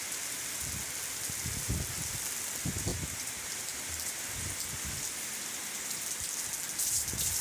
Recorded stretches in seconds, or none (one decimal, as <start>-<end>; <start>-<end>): 0.0-7.4